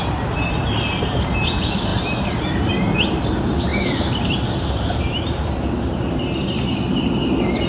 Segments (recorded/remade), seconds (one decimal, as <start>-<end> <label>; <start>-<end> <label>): 0.0-1.9 recorded; 1.9-2.7 remade; 2.7-3.7 recorded; 3.7-6.2 remade; 6.2-7.7 recorded